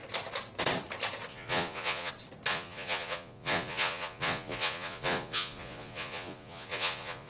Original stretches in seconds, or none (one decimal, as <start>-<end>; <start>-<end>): 0.0-1.3; 2.1-2.5